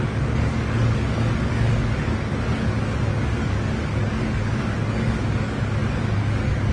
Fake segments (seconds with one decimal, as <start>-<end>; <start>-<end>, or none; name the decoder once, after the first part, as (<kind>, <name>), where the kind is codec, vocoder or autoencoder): 0.0-6.7 (codec, DAC)